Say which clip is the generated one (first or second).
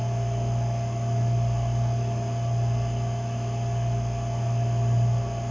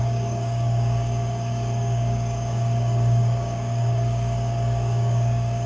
second